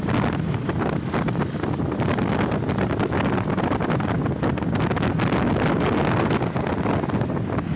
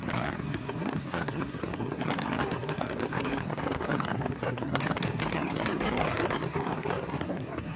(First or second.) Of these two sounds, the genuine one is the first